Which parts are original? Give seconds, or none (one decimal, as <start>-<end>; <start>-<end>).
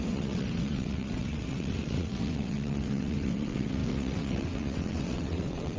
none